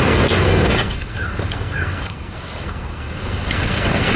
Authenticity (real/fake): fake